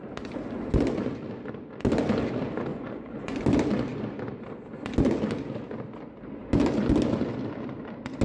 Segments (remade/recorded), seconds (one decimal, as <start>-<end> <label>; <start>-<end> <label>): 0.0-2.7 recorded; 2.7-3.4 remade; 3.4-8.2 recorded